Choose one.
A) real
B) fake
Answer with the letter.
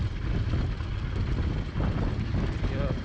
A